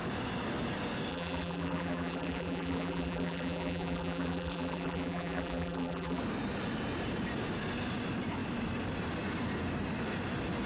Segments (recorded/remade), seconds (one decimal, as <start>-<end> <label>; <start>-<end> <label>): 0.0-1.1 recorded; 1.1-6.2 remade; 6.2-10.7 recorded